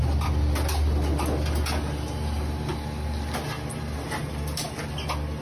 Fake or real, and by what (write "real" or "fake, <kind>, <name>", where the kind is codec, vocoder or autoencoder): real